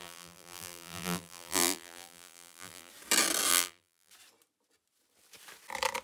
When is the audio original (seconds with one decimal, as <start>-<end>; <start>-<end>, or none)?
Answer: 2.9-3.5; 4.1-6.0

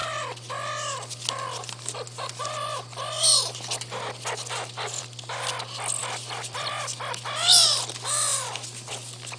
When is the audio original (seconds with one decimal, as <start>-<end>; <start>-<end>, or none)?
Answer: 0.0-6.0; 6.7-9.4

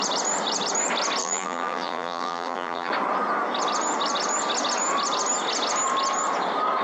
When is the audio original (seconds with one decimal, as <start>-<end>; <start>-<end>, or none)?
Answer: 0.0-1.2; 2.9-6.8

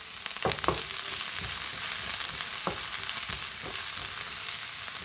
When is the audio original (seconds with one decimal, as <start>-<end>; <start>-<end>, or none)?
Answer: 0.0-5.0

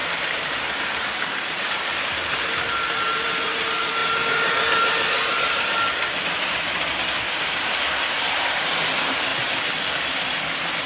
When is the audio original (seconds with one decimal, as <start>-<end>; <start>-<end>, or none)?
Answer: 9.3-9.8

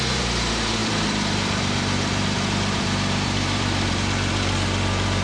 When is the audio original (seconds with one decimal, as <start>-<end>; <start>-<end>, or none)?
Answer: none

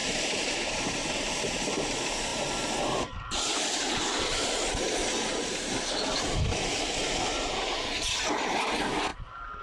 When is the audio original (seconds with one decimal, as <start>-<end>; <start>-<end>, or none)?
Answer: 1.6-2.3; 4.8-6.7; 7.7-9.6